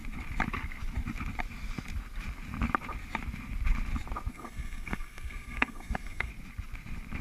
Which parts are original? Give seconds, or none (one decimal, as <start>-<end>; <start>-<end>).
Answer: 0.0-4.3; 6.3-7.2

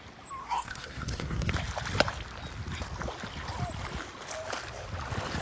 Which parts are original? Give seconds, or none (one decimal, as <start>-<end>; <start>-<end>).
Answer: 0.0-0.4; 1.5-5.4